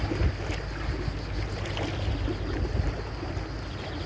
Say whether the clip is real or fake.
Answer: real